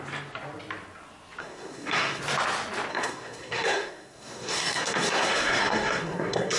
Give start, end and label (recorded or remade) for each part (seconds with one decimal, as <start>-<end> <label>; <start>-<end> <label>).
0.0-1.4 recorded; 1.4-2.2 remade; 2.2-2.9 recorded; 2.9-6.6 remade